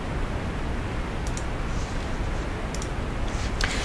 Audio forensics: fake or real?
real